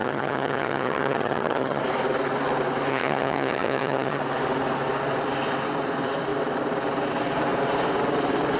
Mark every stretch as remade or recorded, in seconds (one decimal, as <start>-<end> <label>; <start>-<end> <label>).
0.0-1.8 remade; 1.8-2.9 recorded; 2.9-4.2 remade; 4.2-8.6 recorded